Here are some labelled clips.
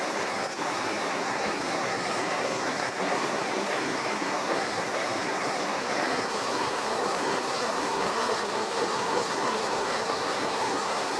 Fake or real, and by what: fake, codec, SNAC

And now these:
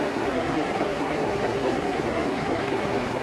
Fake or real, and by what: fake, codec, SNAC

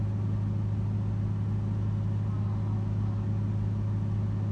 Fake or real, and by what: real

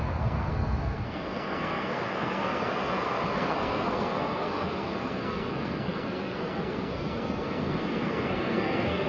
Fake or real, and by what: fake, codec, SNAC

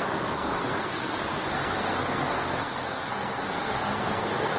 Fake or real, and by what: fake, codec, SNAC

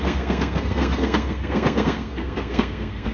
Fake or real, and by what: fake, codec, SNAC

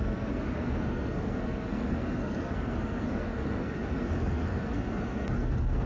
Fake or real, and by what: fake, codec, SNAC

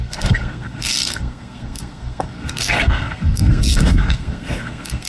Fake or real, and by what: fake, codec, SNAC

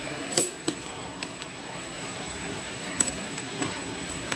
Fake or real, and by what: fake, codec, SNAC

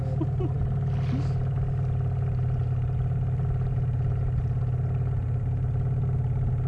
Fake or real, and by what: real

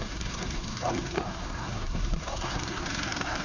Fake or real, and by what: fake, codec, SNAC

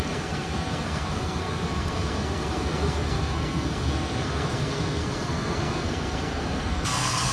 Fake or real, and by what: fake, codec, SNAC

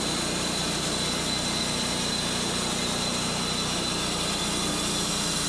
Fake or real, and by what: real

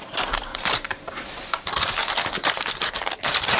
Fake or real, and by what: real